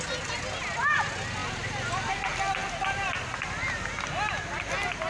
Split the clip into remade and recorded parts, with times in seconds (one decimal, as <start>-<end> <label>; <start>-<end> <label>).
0.0-5.1 recorded